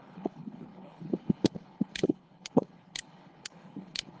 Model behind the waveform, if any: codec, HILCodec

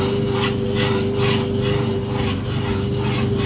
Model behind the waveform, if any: none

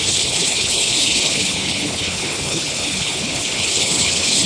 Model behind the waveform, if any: codec, HILCodec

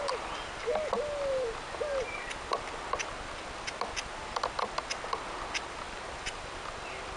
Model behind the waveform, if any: none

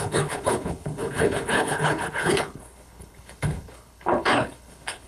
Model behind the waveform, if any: codec, HILCodec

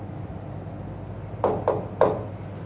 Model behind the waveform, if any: none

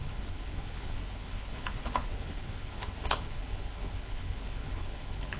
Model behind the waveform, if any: codec, HILCodec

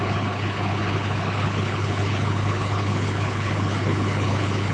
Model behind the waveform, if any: codec, HILCodec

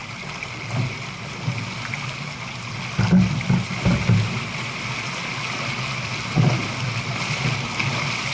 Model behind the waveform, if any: none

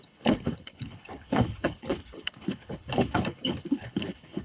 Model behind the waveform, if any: codec, HILCodec